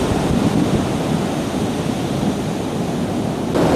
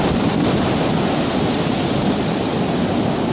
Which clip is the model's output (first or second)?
second